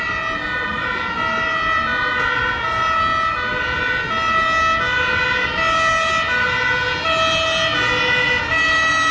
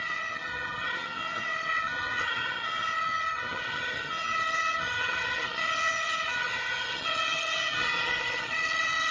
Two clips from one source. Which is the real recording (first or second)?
first